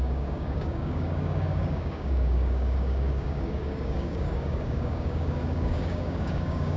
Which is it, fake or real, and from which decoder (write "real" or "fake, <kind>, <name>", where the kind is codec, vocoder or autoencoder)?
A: fake, codec, DAC